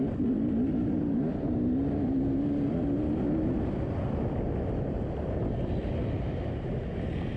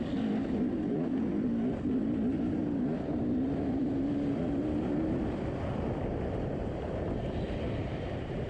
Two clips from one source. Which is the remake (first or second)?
second